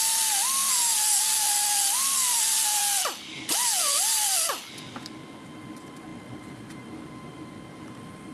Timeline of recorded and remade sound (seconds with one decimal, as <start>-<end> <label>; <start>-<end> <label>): 0.0-8.3 recorded